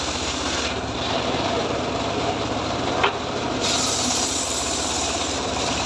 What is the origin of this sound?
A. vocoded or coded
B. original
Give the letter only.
A